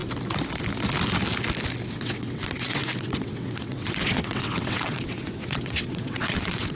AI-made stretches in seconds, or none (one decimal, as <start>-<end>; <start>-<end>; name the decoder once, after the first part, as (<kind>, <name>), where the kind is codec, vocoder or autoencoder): 1.9-6.8 (vocoder, WaveNeXt)